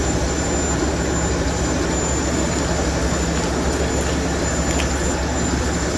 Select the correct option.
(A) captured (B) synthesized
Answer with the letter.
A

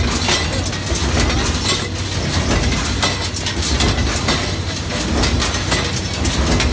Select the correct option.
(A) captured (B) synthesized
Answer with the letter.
A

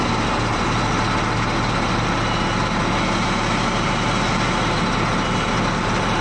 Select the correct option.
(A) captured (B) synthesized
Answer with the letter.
A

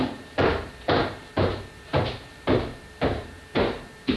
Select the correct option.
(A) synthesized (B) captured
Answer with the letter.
A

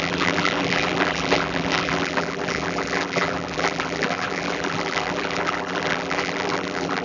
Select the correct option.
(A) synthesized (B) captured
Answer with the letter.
A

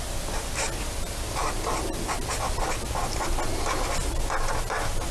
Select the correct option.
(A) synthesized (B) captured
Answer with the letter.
B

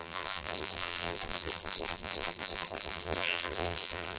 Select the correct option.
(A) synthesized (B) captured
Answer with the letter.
A